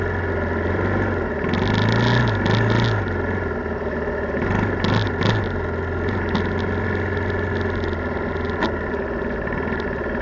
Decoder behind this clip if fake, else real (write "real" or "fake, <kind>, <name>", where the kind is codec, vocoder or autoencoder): real